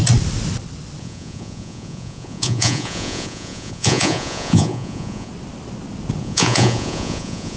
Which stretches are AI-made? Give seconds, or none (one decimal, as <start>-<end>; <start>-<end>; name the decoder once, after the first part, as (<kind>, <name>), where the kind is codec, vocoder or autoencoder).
1.0-5.3 (vocoder, Vocos); 6.2-7.6